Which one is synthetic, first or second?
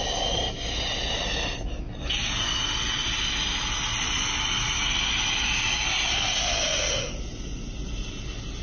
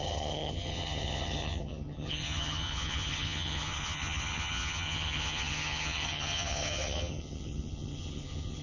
second